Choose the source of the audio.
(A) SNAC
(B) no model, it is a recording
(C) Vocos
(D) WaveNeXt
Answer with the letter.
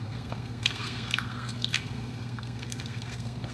A